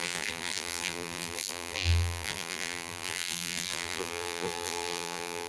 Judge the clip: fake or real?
fake